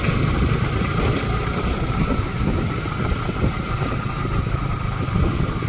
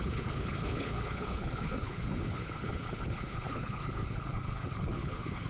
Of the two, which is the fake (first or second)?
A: second